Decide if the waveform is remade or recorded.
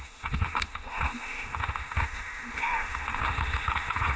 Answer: remade